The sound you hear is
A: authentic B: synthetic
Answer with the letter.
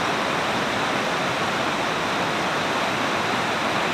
B